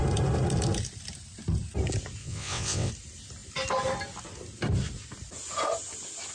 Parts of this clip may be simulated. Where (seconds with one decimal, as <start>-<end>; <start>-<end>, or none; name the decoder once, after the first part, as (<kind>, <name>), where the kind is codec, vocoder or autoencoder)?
2.2-2.9 (vocoder, WaveNeXt)